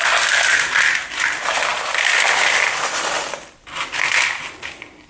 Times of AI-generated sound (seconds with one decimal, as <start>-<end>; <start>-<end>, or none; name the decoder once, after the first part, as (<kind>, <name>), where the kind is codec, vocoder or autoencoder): none